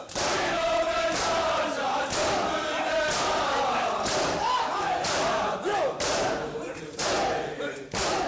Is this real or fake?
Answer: real